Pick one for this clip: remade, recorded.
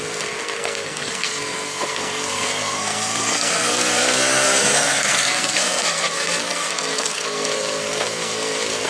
remade